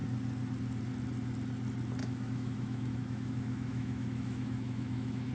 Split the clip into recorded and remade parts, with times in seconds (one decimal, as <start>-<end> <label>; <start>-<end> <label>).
0.0-2.0 recorded; 2.0-5.3 remade